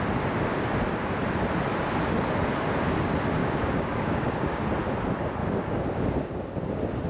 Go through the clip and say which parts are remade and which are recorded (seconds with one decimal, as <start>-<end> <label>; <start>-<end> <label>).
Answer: 0.0-3.4 recorded; 3.4-4.6 remade; 4.6-5.4 recorded; 5.4-6.2 remade; 6.2-7.1 recorded